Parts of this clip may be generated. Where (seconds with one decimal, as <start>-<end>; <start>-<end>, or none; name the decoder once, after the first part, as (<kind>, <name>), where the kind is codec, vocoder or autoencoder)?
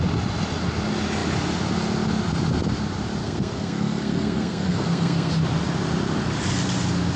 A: 3.2-5.3 (codec, SNAC)